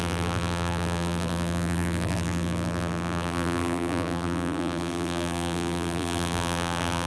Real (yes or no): no